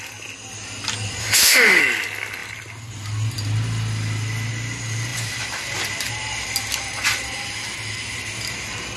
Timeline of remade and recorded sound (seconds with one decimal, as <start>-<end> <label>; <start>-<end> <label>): 0.0-1.2 recorded; 1.2-1.8 remade; 1.8-9.0 recorded